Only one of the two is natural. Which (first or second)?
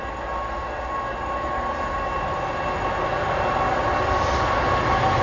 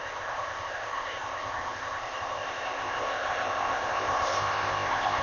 first